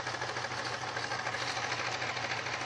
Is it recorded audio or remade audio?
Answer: recorded